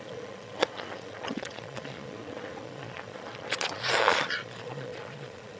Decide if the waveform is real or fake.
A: fake